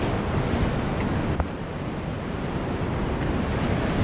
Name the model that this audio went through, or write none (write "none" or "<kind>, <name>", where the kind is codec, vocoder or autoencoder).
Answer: none